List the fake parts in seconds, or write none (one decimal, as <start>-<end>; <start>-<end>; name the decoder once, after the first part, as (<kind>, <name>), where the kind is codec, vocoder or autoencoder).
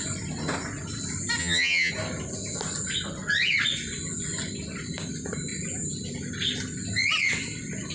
1.4-1.9 (vocoder, HiFi-GAN)